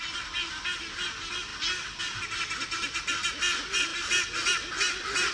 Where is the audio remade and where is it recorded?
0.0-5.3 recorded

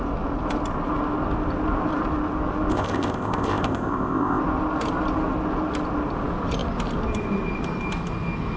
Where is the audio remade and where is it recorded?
0.0-2.7 recorded; 2.7-4.4 remade; 4.4-8.6 recorded

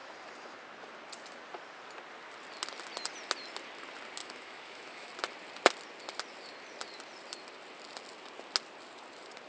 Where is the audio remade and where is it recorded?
0.0-4.2 recorded; 4.2-5.1 remade; 5.1-9.5 recorded

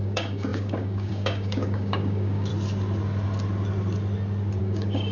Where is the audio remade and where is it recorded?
0.0-2.5 remade; 2.5-4.6 recorded; 4.6-5.1 remade

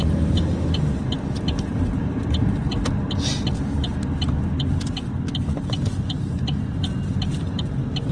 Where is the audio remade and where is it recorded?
0.0-8.1 recorded

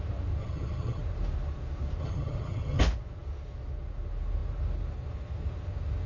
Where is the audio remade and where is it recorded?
0.0-0.4 recorded; 0.4-1.0 remade; 1.0-2.0 recorded; 2.0-2.8 remade; 2.8-6.1 recorded

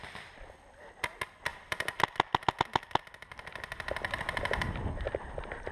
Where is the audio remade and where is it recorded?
0.0-5.7 recorded